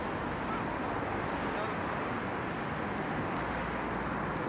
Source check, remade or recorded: recorded